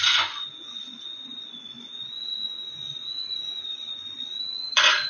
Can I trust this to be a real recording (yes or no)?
no